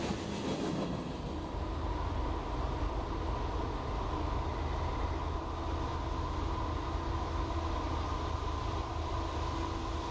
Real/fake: real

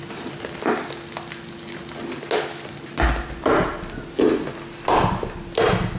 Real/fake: real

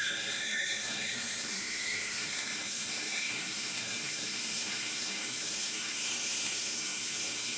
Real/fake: fake